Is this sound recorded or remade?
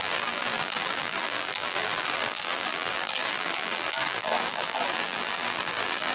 remade